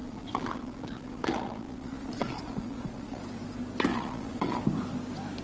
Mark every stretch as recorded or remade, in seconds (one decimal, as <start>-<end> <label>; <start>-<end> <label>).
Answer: 0.0-3.2 remade; 3.2-3.9 recorded; 3.9-4.6 remade; 4.6-5.4 recorded